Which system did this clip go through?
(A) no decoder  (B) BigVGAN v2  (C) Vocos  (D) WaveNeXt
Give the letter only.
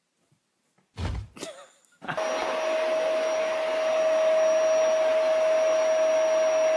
A